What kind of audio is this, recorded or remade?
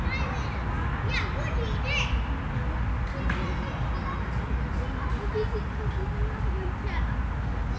recorded